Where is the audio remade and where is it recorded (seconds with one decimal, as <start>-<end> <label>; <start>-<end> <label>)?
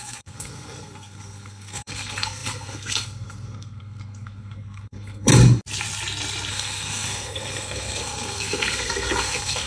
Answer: 0.0-5.3 remade; 5.3-6.5 recorded; 6.5-9.7 remade